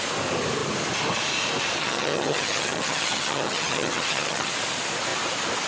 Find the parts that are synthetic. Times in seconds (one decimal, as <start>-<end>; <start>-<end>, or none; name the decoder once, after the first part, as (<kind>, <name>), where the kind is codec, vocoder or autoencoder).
1.8-4.5 (vocoder, HiFi-GAN)